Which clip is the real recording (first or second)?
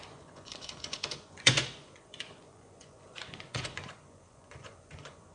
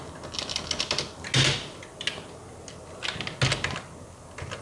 second